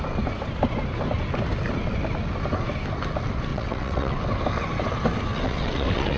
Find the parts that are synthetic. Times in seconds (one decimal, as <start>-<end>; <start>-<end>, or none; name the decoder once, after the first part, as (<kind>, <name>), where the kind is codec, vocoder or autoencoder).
3.5-4.2 (vocoder, WaveNeXt); 5.3-6.2